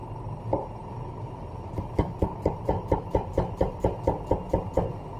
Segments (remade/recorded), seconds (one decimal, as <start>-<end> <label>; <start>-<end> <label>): 0.0-0.8 recorded; 0.8-3.9 remade; 3.9-5.2 recorded